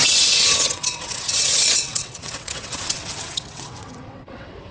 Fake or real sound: fake